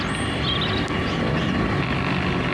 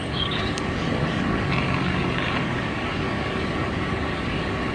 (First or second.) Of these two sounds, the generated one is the second